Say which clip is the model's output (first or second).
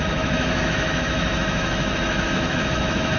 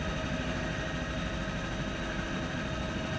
first